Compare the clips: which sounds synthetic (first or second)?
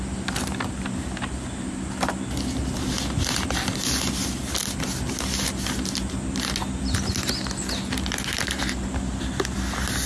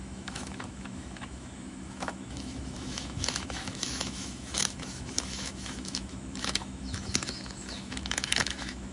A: second